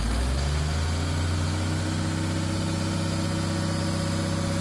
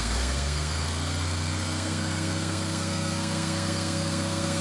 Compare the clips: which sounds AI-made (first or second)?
second